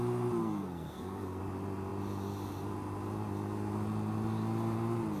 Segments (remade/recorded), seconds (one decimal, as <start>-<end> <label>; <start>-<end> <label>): 0.0-0.4 recorded; 0.4-1.4 remade; 1.4-5.2 recorded